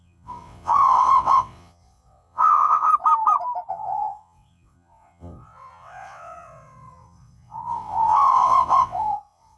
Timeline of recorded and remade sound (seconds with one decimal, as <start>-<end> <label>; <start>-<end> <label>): 0.0-2.9 remade; 2.9-3.7 recorded; 3.7-9.6 remade